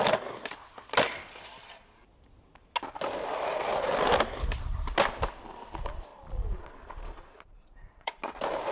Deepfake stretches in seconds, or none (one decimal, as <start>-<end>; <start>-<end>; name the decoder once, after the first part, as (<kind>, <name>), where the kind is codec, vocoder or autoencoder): 6.1-8.2 (vocoder, Vocos)